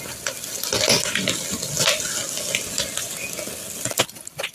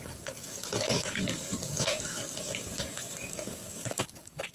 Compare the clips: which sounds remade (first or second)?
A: second